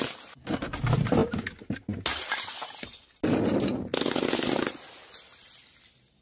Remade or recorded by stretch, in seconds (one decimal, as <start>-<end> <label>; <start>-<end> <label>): 0.0-6.2 recorded